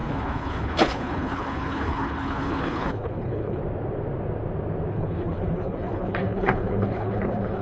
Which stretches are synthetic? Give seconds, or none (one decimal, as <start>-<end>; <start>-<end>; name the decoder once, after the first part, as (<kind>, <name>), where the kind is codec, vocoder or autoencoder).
0.0-3.6 (codec, HILCodec); 4.9-7.6